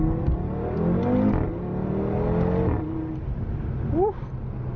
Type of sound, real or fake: real